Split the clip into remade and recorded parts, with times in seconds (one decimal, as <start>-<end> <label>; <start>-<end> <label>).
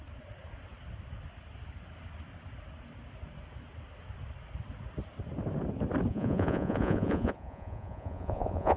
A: 0.0-6.1 recorded; 6.1-8.8 remade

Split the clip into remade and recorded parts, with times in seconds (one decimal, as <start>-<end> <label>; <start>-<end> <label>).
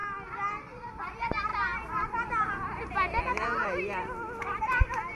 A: 0.0-5.1 recorded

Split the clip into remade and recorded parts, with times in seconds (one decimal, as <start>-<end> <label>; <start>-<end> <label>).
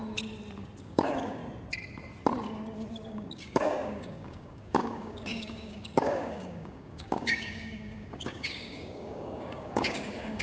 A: 0.0-0.8 recorded; 0.8-1.4 remade; 1.4-3.1 recorded; 3.1-10.4 remade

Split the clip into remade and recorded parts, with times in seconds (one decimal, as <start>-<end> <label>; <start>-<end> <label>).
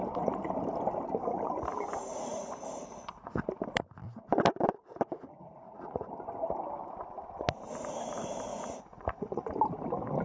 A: 0.0-2.1 recorded; 2.1-3.5 remade; 3.5-5.4 recorded; 5.4-6.0 remade; 6.0-8.5 recorded; 8.5-9.5 remade; 9.5-10.2 recorded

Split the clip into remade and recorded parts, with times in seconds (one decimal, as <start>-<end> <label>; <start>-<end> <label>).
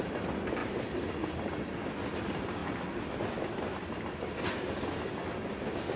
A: 0.0-6.0 recorded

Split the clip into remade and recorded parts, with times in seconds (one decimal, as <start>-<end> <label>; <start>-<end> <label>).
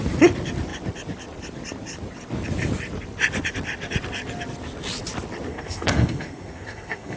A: 0.0-5.5 recorded; 5.5-7.2 remade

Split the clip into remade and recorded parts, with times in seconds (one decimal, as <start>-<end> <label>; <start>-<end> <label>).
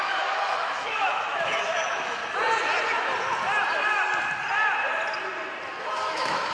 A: 0.0-2.2 remade; 2.2-5.8 recorded; 5.8-6.5 remade